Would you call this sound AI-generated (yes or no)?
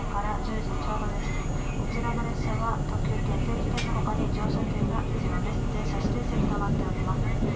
no